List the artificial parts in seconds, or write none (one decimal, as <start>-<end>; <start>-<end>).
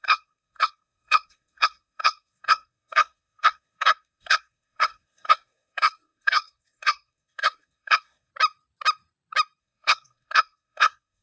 0.0-8.3; 9.6-11.2